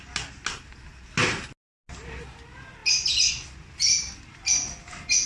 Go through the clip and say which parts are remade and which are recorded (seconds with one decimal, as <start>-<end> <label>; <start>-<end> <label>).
0.0-5.3 recorded